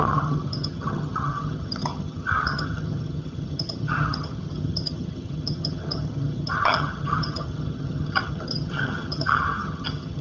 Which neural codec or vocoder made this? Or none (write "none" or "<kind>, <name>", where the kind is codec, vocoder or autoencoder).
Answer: vocoder, HiFi-GAN